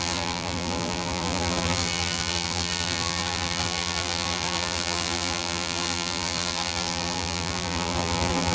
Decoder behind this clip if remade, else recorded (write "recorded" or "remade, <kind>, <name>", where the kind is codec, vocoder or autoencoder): remade, vocoder, BigVGAN v2